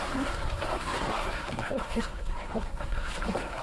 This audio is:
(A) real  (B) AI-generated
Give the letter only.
B